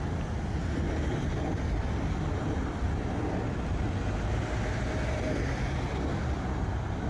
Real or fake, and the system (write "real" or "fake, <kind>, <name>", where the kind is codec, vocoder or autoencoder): real